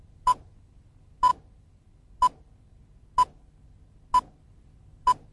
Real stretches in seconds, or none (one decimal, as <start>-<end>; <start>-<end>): 0.0-5.3